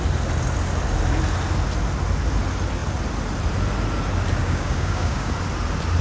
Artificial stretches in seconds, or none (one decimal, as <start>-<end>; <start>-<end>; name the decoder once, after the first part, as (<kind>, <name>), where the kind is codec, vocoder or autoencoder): 4.4-5.3 (codec, DAC)